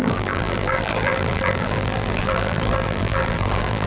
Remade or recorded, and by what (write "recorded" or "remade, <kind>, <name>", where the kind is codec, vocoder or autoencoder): remade, vocoder, BigVGAN v2